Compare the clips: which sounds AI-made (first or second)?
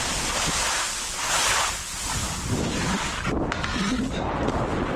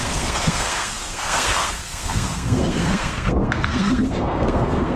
second